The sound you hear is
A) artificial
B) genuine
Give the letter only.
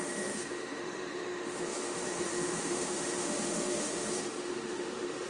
A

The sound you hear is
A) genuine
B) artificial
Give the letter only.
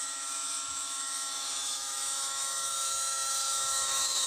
B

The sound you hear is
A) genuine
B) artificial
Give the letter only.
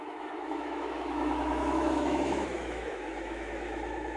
B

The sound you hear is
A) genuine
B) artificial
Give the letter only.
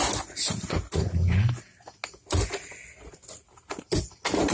A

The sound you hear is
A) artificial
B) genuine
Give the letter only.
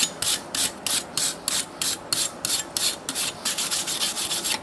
B